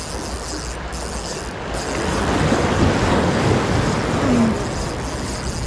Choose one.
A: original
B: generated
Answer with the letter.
A